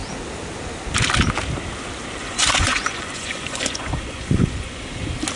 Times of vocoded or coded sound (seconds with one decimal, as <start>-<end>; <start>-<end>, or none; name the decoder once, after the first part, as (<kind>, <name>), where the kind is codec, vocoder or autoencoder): 2.2-4.8 (vocoder, Vocos)